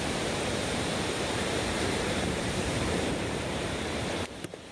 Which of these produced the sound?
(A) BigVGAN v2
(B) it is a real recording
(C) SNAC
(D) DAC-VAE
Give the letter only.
A